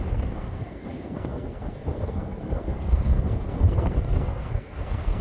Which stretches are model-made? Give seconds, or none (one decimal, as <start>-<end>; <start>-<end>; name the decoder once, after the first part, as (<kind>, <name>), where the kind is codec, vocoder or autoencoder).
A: 0.0-5.2 (codec, SNAC)